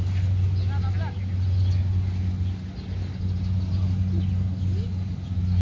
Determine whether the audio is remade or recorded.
recorded